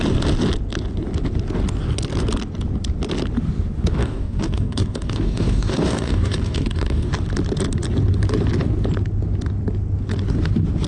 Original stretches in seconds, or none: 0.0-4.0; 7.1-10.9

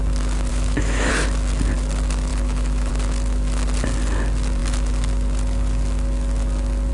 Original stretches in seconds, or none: 0.0-0.5; 1.1-2.3; 2.9-6.9

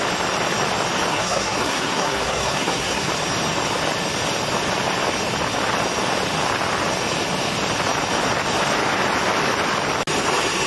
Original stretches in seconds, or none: 0.0-1.1; 3.1-10.7

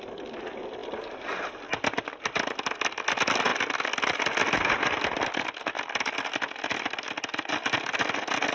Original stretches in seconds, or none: 0.0-8.5